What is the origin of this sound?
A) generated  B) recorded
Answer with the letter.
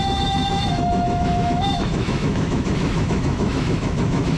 A